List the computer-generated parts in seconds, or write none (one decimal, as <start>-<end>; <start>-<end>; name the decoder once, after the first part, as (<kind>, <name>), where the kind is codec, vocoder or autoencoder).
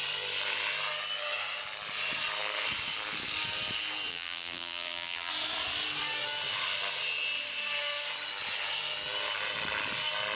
4.1-5.3 (vocoder, BigVGAN v2)